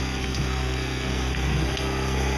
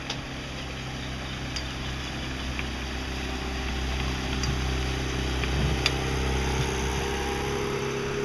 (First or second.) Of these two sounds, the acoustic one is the second